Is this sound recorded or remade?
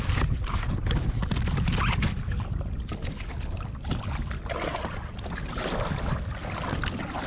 recorded